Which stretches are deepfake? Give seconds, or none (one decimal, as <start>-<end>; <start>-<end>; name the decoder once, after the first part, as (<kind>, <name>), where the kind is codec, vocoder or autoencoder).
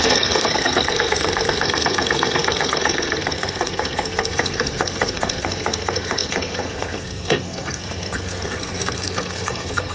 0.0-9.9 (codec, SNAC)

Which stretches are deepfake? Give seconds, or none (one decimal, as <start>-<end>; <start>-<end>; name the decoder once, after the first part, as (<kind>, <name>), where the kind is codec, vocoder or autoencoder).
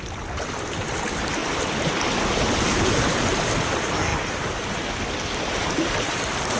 none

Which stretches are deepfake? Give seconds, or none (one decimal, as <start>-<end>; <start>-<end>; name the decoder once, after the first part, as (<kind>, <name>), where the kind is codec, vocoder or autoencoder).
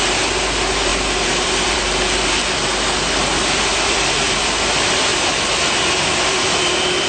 0.9-1.8 (vocoder, BigVGAN v2); 3.7-4.4; 5.1-7.1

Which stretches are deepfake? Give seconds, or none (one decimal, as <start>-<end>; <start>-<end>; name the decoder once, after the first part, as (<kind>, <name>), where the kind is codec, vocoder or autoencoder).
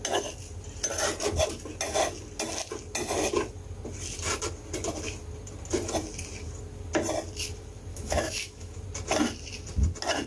7.9-8.8 (autoencoder, DAC-VAE)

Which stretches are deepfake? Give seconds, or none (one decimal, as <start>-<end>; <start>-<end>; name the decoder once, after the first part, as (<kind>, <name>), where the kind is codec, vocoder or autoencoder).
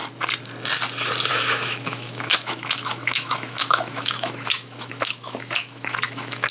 1.3-6.5 (autoencoder, DAC-VAE)